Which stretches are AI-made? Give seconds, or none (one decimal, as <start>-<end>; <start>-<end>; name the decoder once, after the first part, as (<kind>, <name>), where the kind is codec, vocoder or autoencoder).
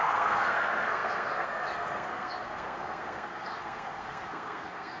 0.0-5.0 (codec, SNAC)